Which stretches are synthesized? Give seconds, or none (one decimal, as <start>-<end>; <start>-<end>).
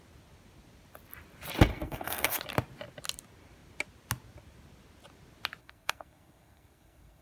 1.7-2.4; 5.6-7.2